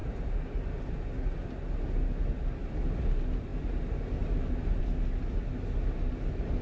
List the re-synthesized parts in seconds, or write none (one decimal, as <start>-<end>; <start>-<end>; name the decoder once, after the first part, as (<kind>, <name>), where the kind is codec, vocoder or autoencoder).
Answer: none